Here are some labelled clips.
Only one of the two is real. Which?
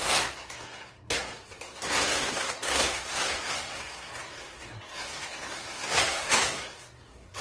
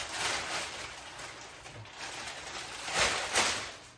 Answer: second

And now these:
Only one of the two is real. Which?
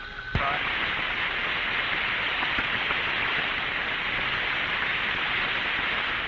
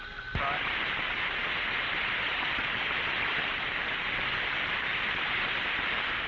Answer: first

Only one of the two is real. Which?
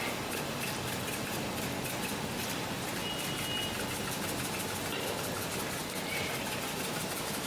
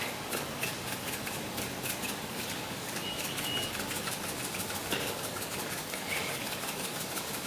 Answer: first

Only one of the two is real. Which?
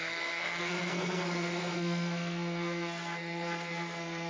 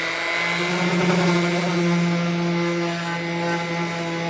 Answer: second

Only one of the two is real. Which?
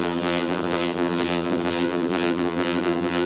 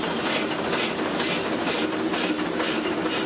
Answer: second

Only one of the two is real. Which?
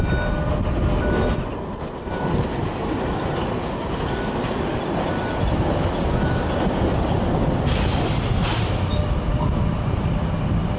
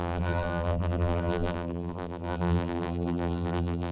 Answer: first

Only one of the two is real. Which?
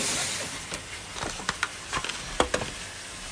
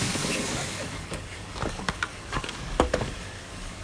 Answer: first